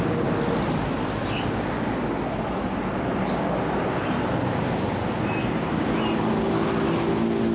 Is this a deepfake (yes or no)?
no